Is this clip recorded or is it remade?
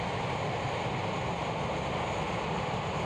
recorded